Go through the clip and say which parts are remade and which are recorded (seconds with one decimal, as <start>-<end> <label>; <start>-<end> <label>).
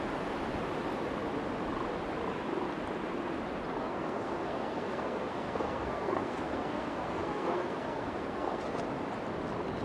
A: 0.0-3.8 recorded; 3.8-8.8 remade; 8.8-9.8 recorded